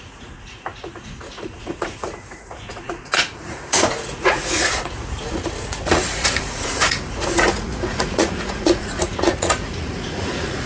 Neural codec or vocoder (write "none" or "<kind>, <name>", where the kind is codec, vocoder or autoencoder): vocoder, Vocos